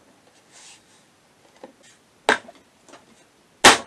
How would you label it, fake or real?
real